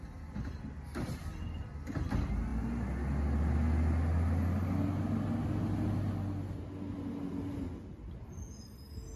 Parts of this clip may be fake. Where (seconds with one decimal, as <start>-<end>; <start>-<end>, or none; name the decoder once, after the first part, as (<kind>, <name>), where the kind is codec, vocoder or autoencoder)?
none